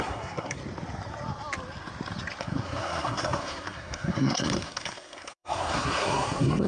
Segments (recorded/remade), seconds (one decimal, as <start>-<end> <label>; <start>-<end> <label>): 0.0-0.6 remade; 0.6-2.4 recorded; 2.4-6.7 remade